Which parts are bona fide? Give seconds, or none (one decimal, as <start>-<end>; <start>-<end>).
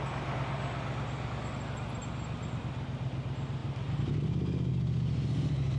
0.0-5.8